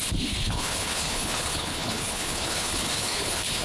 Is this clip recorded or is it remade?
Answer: remade